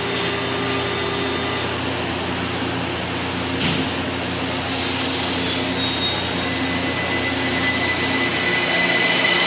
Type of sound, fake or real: real